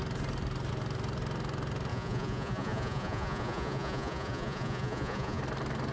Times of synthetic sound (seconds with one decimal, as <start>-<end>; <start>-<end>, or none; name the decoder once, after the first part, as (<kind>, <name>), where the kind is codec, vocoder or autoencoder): 1.9-5.4 (vocoder, Vocos)